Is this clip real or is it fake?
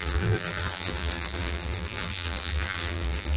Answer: fake